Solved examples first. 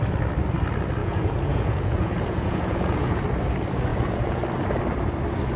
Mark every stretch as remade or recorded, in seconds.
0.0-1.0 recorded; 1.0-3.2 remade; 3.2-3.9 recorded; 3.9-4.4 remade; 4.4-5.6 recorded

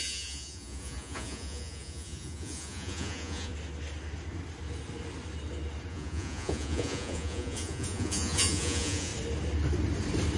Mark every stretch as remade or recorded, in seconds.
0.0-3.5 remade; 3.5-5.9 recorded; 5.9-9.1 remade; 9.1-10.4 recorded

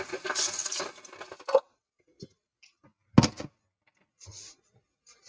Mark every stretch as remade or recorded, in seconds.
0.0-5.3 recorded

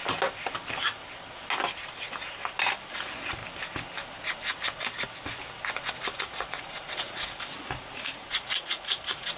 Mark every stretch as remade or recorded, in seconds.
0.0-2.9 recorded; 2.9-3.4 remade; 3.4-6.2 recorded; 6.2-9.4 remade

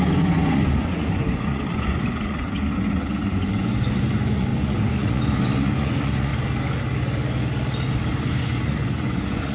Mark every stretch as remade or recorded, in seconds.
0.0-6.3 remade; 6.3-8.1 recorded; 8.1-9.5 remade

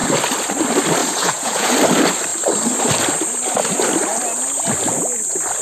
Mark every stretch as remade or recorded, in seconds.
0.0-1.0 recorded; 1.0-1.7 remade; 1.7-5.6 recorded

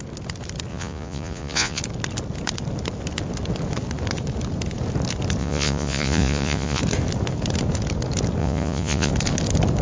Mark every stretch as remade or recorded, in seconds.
0.0-0.7 recorded; 0.7-1.8 remade; 1.8-5.4 recorded; 5.4-6.8 remade; 6.8-8.4 recorded; 8.4-9.1 remade; 9.1-9.8 recorded